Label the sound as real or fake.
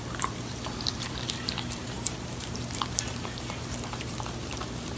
fake